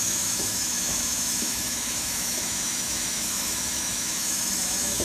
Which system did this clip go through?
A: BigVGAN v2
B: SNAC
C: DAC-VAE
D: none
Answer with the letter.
C